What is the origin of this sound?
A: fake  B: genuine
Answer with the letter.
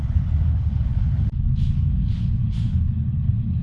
A